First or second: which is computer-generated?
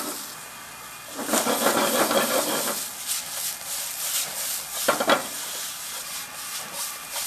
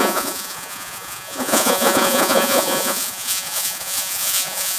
second